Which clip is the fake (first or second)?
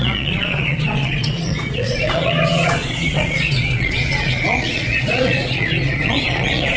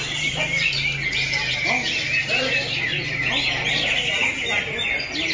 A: first